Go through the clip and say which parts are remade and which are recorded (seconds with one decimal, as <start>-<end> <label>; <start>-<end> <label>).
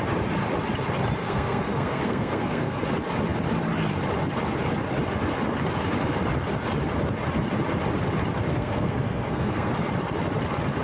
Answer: 0.0-1.2 recorded; 1.2-2.8 remade; 2.8-8.5 recorded; 8.5-9.7 remade; 9.7-10.8 recorded